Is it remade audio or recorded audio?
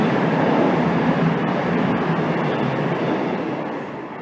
recorded